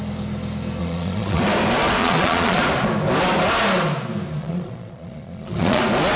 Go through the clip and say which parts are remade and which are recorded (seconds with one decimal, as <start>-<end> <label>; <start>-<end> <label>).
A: 0.0-0.8 recorded; 0.8-1.4 remade; 1.4-2.0 recorded; 2.0-2.6 remade; 2.6-4.4 recorded; 4.4-5.8 remade; 5.8-6.2 recorded